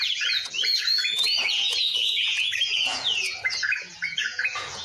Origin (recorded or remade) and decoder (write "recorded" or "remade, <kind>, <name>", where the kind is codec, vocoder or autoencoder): remade, vocoder, Vocos